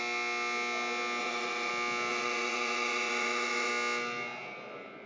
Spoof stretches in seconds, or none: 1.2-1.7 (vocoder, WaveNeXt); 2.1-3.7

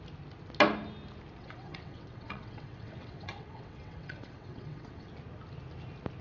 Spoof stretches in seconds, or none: 1.4-5.1 (vocoder, WaveNeXt)

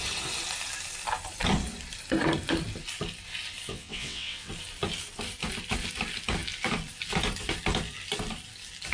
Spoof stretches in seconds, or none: 3.7-4.5 (vocoder, WaveNeXt)